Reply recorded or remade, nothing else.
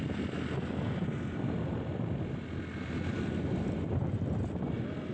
recorded